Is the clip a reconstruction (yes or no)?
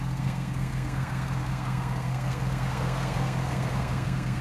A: yes